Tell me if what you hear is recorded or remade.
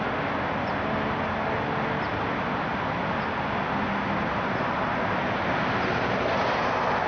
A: recorded